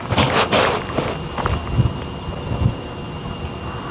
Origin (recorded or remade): recorded